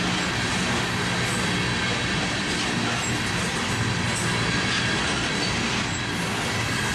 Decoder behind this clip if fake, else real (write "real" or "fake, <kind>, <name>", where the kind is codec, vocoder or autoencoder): real